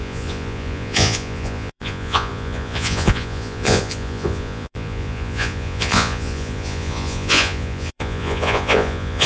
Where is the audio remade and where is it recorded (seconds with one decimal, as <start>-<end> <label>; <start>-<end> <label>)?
0.0-9.3 remade